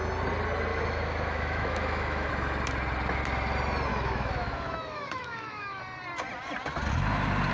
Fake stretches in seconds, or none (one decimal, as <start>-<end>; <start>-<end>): 0.7-2.3; 3.9-5.8